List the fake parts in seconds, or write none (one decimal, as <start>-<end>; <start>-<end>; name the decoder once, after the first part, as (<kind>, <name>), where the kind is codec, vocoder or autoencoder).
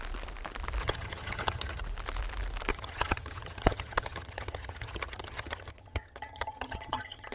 0.8-1.8 (vocoder, HiFi-GAN); 2.7-7.3